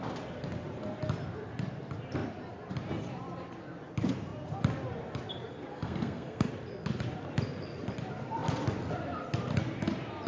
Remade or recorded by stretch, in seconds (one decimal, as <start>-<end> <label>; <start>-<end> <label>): 0.0-5.7 recorded; 5.7-6.5 remade; 6.5-10.3 recorded